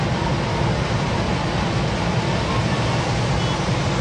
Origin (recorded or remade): recorded